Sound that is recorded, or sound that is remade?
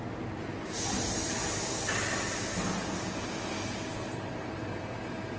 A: recorded